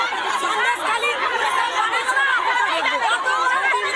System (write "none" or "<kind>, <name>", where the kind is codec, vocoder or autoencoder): none